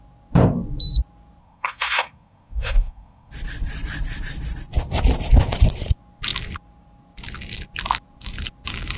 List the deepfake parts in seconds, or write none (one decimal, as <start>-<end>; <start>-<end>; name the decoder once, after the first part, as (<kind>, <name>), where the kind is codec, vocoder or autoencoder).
1.4-3.3 (codec, SNAC)